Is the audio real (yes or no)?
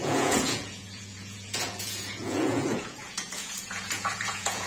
no